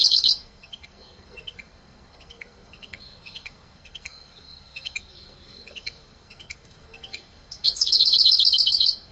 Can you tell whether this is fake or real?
fake